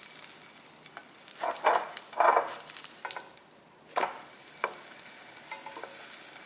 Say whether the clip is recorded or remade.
recorded